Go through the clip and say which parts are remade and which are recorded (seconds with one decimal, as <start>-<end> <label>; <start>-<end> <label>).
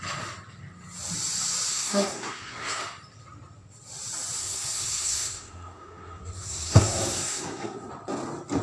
0.0-1.7 recorded; 1.7-2.8 remade; 2.8-4.4 recorded; 4.4-7.9 remade; 7.9-8.6 recorded